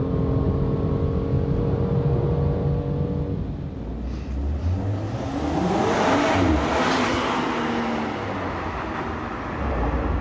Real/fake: real